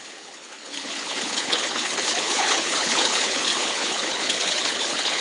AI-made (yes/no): yes